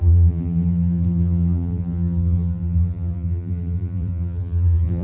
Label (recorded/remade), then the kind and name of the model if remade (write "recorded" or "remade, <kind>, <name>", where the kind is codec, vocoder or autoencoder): remade, vocoder, BigVGAN v2